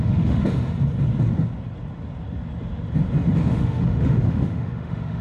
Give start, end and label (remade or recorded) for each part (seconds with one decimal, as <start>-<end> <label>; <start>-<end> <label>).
0.0-0.4 remade; 0.4-3.5 recorded; 3.5-5.2 remade